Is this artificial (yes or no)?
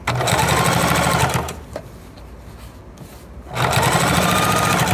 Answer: no